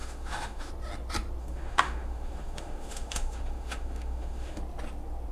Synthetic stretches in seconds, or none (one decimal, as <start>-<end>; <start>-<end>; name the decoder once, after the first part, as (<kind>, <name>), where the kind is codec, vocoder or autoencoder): 0.0-0.7 (autoencoder, DAC-VAE); 1.4-4.6